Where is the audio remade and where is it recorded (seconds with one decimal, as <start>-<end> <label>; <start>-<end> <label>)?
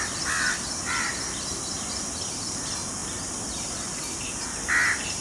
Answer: 0.0-5.2 recorded